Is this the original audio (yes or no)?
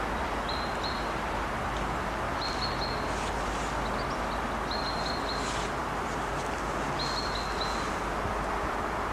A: yes